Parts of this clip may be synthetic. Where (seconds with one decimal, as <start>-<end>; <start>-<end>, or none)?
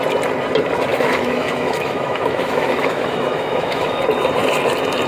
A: 0.9-4.0